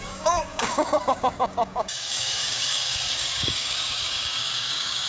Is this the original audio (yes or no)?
no